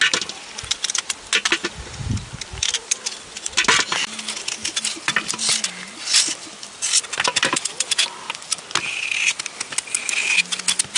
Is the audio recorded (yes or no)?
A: yes